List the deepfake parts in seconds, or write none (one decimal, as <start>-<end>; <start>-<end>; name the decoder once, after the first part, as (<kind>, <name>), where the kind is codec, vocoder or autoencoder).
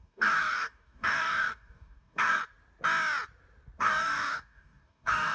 0.0-2.4 (codec, DAC); 3.8-5.3